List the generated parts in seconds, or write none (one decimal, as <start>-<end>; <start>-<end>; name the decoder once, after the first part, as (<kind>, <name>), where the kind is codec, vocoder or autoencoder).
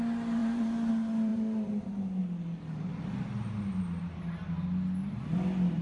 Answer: 0.4-0.9 (vocoder, BigVGAN v2); 1.3-2.2